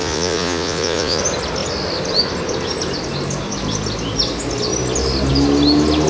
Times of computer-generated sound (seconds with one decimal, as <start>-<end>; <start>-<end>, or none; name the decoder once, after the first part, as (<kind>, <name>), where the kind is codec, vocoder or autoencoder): 0.0-1.2 (vocoder, Vocos)